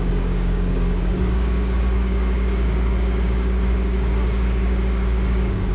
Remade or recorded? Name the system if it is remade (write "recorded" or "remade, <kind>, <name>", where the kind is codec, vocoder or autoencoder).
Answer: remade, codec, DAC